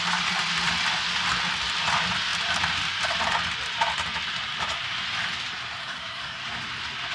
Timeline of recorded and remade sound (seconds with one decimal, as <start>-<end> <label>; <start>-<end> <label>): 0.0-5.8 recorded; 5.8-6.4 remade; 6.4-7.1 recorded